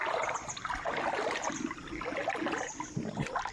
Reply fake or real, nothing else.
real